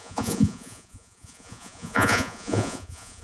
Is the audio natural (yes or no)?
no